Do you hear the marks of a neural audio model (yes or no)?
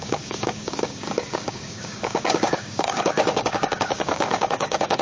yes